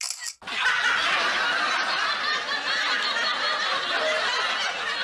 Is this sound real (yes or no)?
yes